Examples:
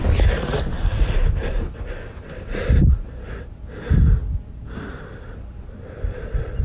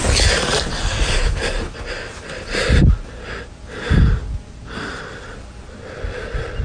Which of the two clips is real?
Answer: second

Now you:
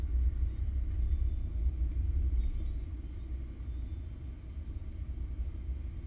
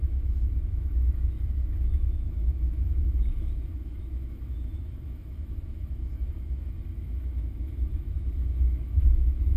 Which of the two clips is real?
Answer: first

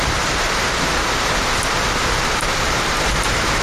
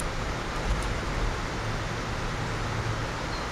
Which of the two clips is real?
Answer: second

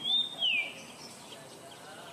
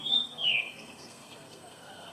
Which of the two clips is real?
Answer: first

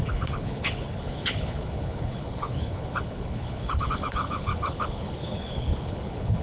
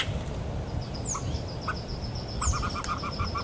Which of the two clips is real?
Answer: second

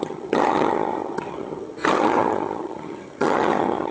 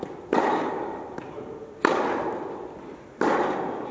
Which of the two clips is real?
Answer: second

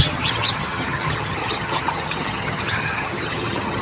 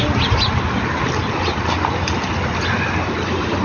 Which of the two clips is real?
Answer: second